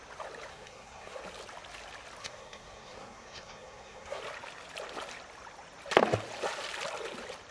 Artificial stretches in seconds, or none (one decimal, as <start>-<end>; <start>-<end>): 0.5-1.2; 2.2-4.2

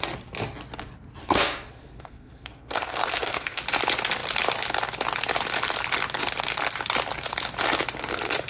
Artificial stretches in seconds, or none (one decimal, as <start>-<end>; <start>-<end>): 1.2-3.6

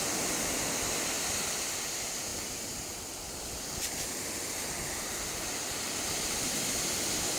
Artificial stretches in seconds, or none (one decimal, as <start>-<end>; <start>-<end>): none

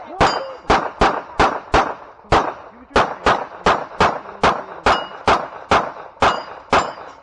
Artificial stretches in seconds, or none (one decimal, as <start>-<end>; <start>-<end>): 2.3-2.9; 6.4-7.2

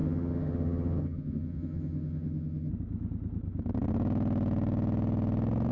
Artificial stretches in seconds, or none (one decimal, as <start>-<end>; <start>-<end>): 0.0-2.7